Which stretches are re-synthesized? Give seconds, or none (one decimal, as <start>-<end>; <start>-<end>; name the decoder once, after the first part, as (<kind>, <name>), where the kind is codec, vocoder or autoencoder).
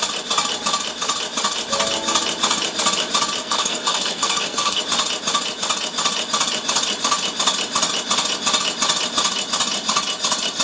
3.4-4.8 (codec, SNAC)